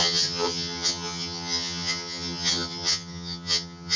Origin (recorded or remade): remade